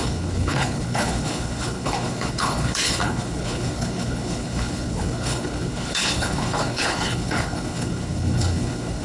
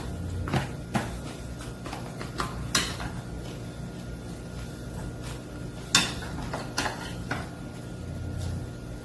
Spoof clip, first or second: first